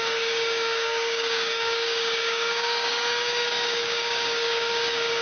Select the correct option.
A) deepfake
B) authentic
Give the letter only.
A